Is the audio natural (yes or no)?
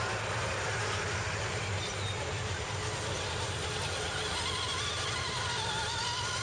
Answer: yes